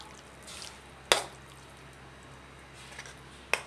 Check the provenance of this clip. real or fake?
real